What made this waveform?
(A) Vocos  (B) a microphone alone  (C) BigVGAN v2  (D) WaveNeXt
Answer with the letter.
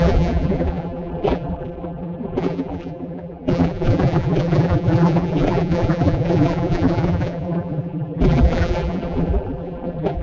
C